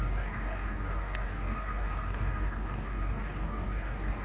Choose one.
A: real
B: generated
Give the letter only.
B